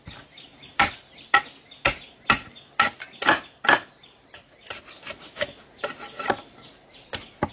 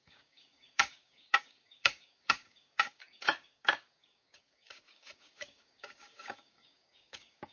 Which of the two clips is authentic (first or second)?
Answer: first